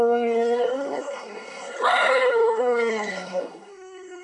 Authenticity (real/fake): fake